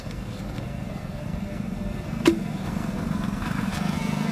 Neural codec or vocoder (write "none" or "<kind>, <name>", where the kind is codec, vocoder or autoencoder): codec, SNAC